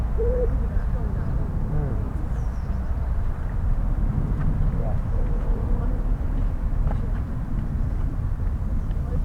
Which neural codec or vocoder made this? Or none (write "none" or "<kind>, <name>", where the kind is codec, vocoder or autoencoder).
vocoder, BigVGAN v2